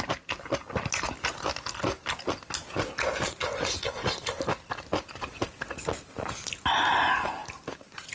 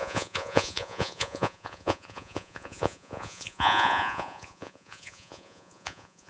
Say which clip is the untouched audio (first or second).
first